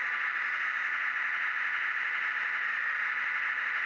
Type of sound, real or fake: real